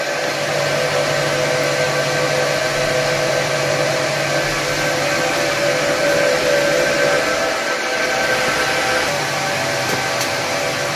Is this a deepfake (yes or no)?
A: no